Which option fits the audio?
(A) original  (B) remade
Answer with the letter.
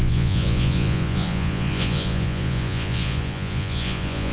B